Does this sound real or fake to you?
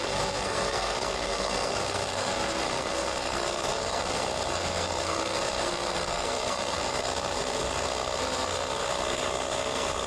fake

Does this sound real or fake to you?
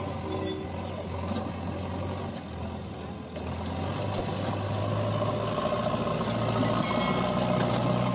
real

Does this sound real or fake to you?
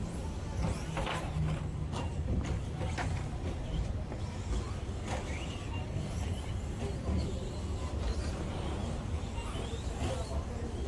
real